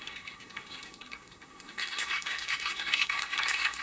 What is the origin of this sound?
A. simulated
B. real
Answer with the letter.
A